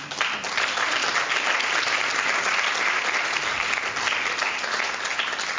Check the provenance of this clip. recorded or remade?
recorded